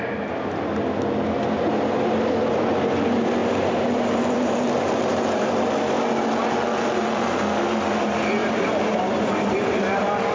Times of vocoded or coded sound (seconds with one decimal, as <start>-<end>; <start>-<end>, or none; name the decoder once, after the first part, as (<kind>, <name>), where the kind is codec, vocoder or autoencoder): 3.4-5.6 (vocoder, BigVGAN v2); 8.4-9.8